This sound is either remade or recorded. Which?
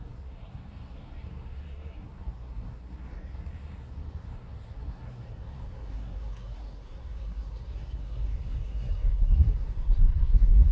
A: remade